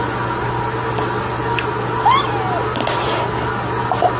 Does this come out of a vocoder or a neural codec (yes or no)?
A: no